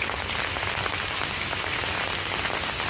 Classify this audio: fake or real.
real